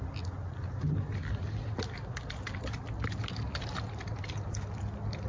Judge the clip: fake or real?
real